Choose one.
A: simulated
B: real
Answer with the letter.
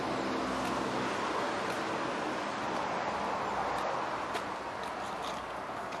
B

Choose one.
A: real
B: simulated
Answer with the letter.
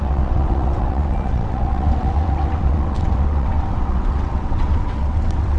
B